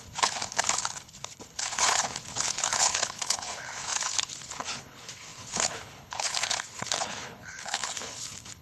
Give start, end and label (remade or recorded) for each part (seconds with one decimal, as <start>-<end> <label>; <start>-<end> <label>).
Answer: 0.0-8.6 remade